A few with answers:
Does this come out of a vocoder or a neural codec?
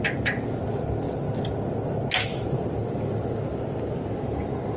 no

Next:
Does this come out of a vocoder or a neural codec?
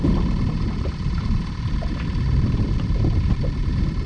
no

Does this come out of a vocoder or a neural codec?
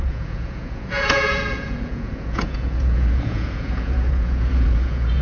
yes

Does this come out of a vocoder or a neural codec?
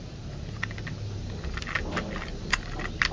no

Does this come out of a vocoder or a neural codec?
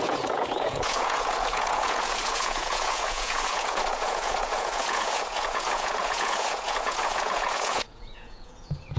yes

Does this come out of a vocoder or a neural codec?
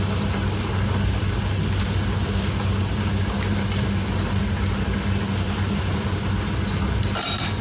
no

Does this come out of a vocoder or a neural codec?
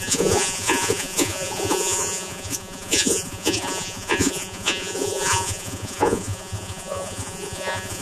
yes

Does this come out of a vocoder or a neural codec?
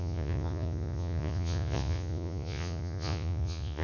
yes